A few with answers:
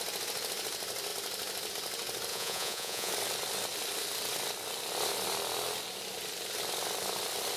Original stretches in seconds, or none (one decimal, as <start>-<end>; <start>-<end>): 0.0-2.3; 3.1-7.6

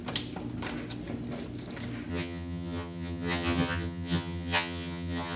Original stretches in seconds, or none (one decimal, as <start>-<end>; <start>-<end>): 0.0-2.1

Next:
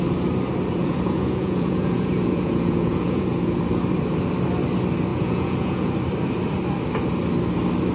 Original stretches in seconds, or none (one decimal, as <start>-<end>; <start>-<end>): 0.0-0.8; 3.6-5.1; 5.9-7.9

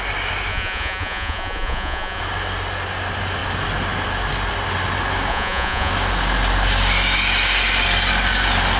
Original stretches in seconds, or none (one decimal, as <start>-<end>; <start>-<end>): 0.0-0.5; 2.2-5.3; 5.9-8.8

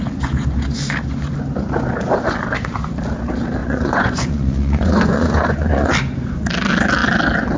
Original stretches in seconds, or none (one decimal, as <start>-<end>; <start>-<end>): 0.0-3.6; 5.9-7.6

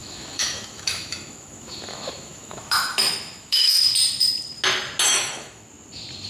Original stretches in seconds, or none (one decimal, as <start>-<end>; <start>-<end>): 3.8-5.1; 5.7-6.3

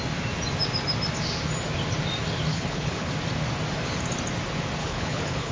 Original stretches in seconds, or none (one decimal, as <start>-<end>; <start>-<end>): 0.0-2.5; 3.1-4.8

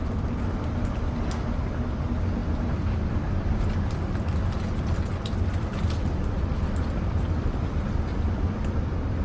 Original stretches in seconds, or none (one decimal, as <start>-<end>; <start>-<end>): 0.0-9.2